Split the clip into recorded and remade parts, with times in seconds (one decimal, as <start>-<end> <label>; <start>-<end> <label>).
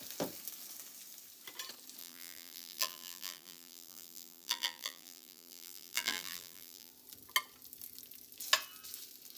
0.0-2.0 recorded; 2.0-6.9 remade; 6.9-9.4 recorded